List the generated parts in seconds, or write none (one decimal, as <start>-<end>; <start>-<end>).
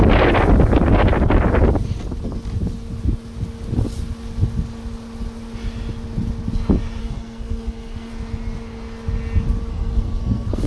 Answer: 7.0-8.1; 9.7-10.7